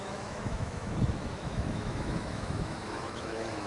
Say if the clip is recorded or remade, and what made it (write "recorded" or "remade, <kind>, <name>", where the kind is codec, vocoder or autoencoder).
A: remade, autoencoder, DAC-VAE